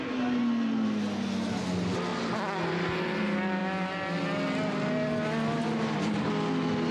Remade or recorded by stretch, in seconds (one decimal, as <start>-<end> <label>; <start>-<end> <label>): 0.0-6.9 recorded